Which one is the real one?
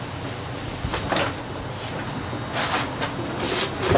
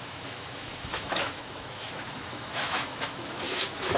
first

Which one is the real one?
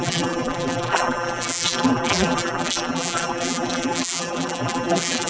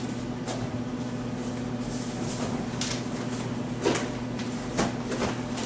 second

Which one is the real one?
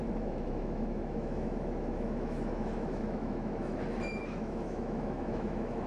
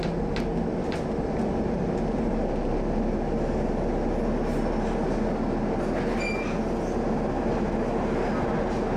second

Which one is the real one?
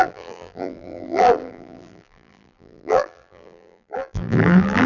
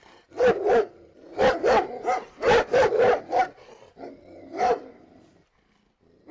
second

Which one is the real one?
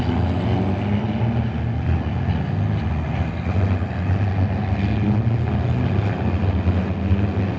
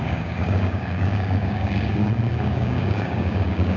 first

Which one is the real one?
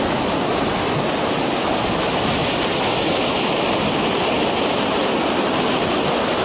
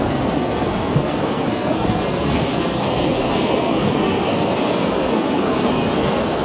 first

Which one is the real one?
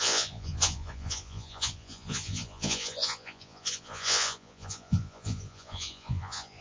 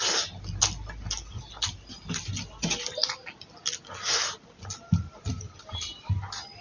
second